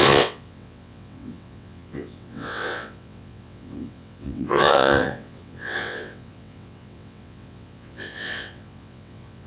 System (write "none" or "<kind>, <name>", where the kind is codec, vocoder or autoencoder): vocoder, WaveNeXt